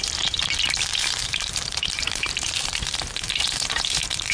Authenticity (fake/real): fake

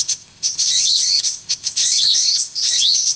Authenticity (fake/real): fake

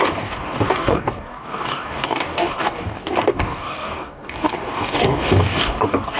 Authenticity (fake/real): fake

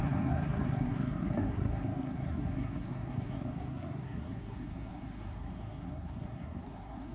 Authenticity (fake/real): fake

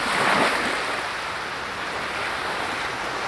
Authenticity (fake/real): real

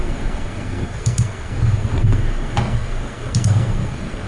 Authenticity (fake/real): fake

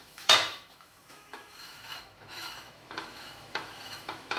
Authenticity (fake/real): fake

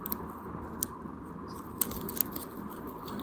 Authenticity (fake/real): real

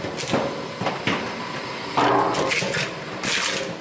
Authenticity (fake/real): real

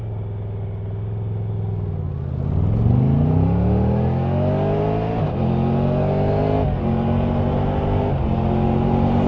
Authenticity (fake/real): real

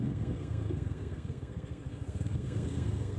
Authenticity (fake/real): fake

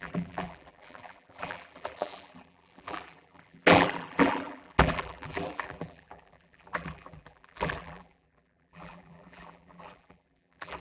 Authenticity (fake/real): fake